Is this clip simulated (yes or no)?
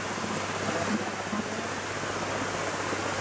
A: no